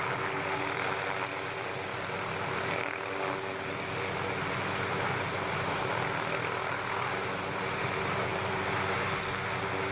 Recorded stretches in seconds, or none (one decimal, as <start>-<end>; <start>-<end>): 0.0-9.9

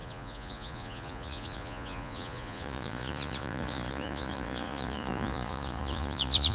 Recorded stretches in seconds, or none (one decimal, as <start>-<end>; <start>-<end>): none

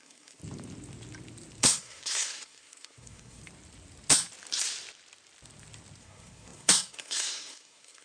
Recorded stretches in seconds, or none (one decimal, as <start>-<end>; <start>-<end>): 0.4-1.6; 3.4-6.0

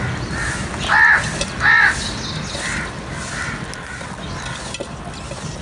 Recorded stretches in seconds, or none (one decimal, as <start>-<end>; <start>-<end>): 0.0-5.6